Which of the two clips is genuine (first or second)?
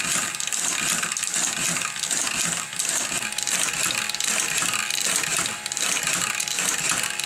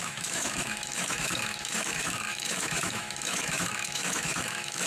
first